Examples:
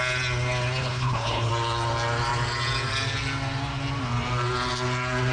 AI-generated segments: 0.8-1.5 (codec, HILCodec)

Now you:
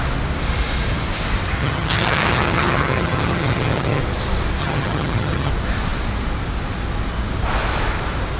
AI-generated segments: 1.6-4.0 (vocoder, HiFi-GAN); 4.6-5.5

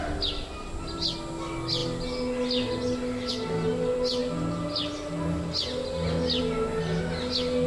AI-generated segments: none

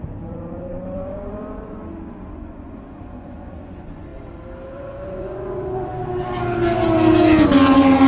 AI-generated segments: 0.0-1.8 (vocoder, Vocos); 2.3-4.1; 4.7-5.9